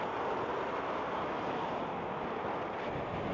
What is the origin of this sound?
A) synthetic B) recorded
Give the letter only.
B